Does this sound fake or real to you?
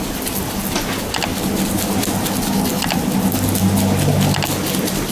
real